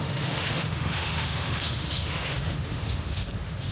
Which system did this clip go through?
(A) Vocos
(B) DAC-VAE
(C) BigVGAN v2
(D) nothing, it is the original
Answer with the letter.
B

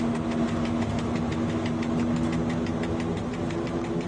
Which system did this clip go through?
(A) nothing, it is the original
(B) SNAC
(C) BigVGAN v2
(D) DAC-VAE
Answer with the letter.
A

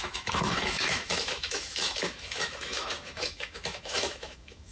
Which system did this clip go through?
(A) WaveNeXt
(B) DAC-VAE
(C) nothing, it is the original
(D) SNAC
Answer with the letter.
B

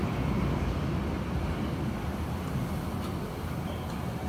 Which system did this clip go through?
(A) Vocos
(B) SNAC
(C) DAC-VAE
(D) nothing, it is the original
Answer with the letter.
D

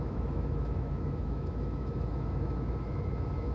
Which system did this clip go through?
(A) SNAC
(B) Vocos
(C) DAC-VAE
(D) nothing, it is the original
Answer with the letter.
C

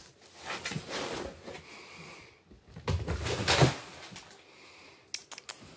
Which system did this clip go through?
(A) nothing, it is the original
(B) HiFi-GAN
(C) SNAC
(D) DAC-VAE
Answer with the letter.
A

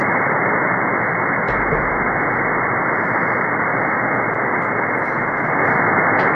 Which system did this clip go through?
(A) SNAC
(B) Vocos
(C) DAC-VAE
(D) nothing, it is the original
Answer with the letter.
D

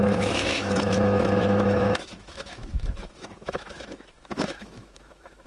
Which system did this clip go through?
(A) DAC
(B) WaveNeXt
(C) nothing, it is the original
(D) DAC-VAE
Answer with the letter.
D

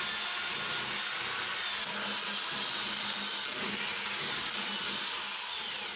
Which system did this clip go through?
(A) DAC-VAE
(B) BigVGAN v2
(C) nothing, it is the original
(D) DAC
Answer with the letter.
C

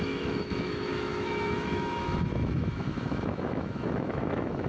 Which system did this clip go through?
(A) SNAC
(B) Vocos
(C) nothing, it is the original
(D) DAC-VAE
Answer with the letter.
D